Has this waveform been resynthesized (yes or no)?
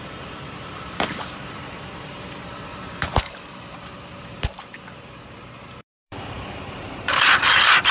yes